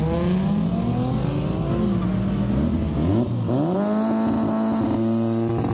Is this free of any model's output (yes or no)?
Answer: yes